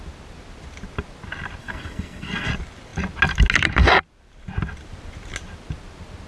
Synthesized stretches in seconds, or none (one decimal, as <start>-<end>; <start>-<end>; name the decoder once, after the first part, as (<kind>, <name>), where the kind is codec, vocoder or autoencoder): 1.6-2.5 (codec, SNAC)